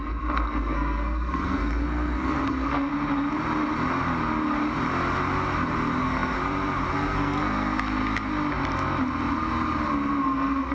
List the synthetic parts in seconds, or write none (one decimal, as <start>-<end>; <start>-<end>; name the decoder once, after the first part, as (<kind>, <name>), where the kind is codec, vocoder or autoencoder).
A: 0.0-2.9 (codec, SNAC); 6.0-6.4; 6.9-8.0; 10.2-10.7